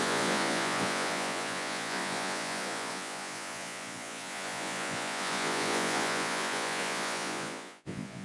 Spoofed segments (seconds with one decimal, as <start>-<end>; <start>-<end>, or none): 0.0-8.2